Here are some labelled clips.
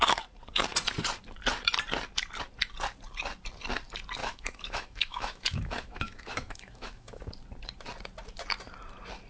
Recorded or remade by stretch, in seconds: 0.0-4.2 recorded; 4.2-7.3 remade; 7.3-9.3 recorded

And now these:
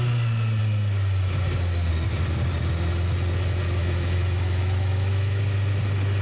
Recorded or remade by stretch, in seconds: 0.0-3.8 recorded; 3.8-5.4 remade; 5.4-6.2 recorded

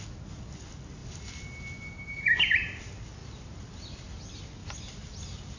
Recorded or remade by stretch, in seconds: 0.0-5.6 recorded